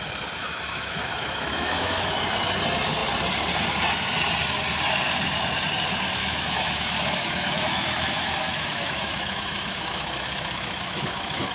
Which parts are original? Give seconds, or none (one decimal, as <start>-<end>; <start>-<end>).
0.0-0.4; 2.2-6.2